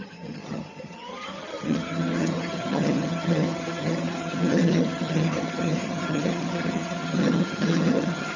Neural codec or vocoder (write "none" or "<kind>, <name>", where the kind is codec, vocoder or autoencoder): vocoder, HiFi-GAN